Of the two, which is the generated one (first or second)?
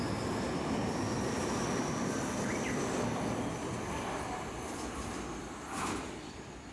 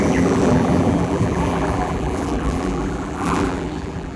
second